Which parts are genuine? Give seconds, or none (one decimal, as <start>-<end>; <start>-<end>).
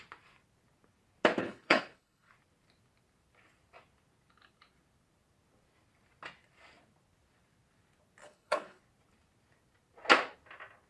0.0-1.4; 2.3-8.2; 8.8-10.9